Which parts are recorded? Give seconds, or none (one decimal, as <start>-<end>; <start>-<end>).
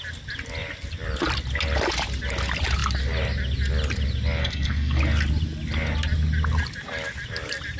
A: 0.0-4.4; 5.0-7.8